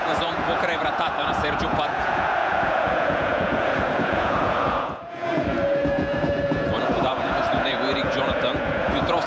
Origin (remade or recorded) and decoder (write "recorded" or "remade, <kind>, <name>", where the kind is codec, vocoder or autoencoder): remade, vocoder, Vocos